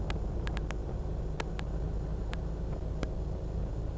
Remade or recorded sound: recorded